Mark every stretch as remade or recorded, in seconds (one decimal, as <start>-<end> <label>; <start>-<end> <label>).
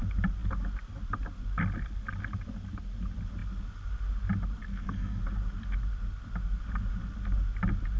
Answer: 0.0-4.7 recorded; 4.7-5.2 remade; 5.2-8.0 recorded